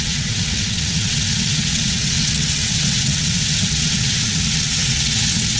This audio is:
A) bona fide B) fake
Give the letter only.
B